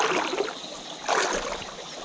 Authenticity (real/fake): real